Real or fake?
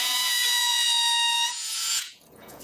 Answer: fake